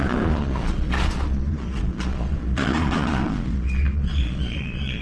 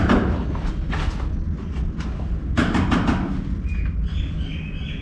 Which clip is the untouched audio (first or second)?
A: second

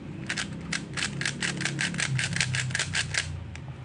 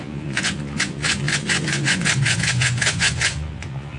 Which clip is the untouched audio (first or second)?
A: first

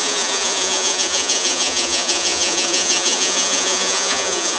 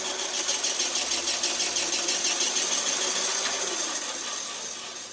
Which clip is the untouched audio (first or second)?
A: second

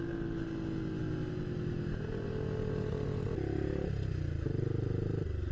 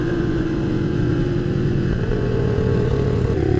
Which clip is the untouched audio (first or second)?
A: first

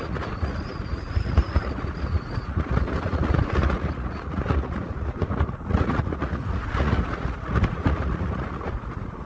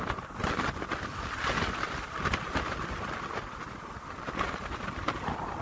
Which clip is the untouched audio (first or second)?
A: second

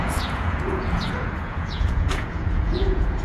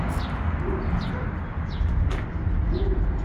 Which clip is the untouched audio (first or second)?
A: second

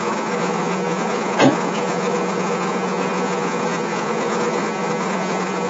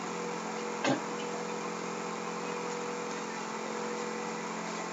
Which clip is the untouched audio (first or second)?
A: second